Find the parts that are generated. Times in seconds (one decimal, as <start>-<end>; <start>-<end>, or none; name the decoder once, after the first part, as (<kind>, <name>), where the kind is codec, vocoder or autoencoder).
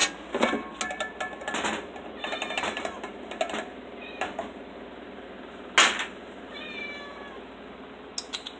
none